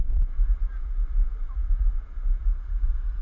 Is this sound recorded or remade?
remade